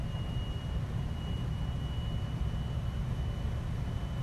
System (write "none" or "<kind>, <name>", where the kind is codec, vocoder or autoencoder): none